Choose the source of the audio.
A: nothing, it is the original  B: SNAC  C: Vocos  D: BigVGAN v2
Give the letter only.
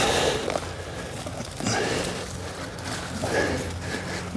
A